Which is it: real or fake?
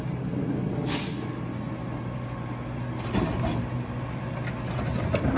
real